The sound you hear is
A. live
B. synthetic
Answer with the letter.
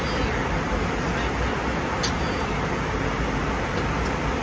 A